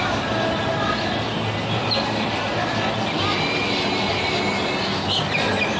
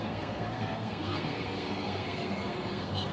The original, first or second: first